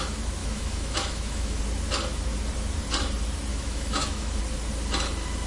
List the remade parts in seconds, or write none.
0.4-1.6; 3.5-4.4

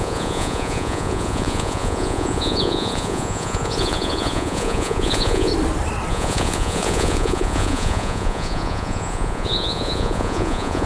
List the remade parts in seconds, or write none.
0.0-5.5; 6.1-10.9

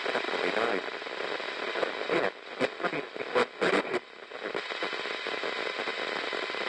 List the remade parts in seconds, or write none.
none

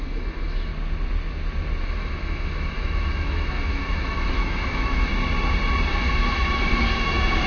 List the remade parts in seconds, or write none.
0.0-0.7; 1.8-5.1; 5.9-7.5

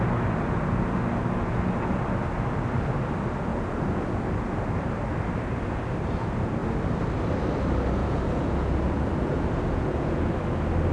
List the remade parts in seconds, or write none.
3.5-4.6; 8.0-10.3

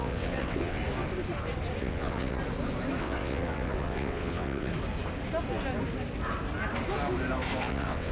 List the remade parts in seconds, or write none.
0.0-0.8; 1.8-2.4; 3.0-4.7; 7.6-8.1

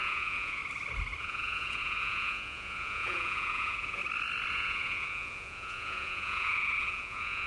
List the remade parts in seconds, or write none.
0.0-0.6; 1.2-4.0; 4.5-7.5